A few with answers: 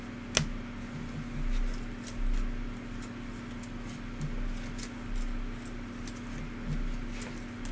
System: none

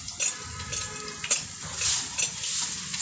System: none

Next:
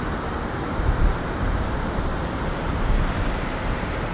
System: vocoder, BigVGAN v2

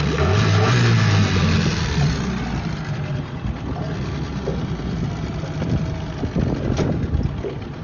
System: none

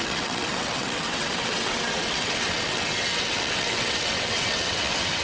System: vocoder, WaveNeXt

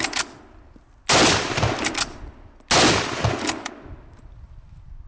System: none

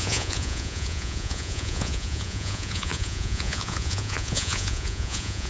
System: vocoder, Vocos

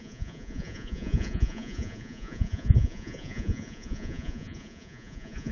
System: vocoder, Vocos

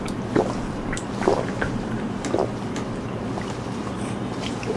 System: none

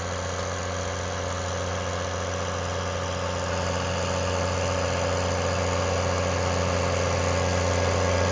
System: none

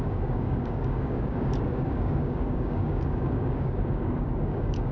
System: codec, DAC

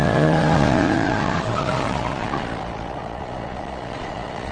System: vocoder, Vocos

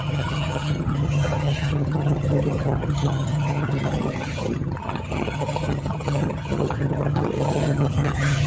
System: vocoder, HiFi-GAN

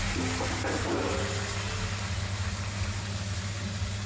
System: none